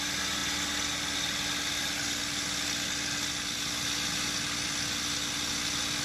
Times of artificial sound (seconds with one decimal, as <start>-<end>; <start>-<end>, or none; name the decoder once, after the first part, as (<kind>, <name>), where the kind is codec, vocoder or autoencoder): none